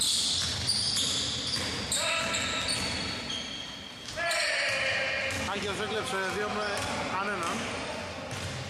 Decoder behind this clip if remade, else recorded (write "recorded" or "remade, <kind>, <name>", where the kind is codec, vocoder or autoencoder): recorded